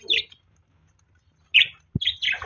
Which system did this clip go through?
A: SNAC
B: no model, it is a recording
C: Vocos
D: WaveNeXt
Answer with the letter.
B